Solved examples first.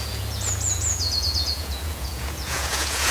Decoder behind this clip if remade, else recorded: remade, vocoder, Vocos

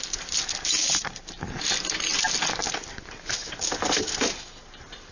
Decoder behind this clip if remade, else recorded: recorded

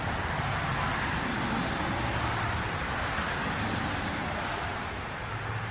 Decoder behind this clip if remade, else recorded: recorded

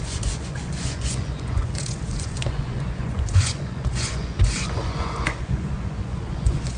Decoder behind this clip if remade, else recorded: remade, vocoder, Vocos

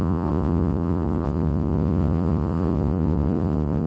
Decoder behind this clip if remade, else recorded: remade, vocoder, Vocos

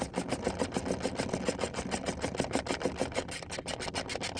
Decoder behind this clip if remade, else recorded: recorded